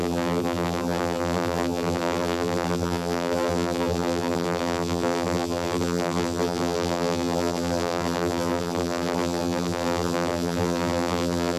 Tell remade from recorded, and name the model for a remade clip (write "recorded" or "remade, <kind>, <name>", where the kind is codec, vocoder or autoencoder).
remade, vocoder, BigVGAN v2